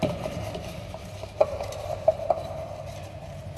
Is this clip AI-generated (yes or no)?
yes